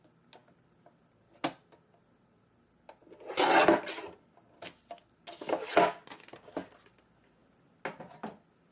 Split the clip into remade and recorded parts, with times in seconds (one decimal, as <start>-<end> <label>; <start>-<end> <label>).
0.0-8.7 recorded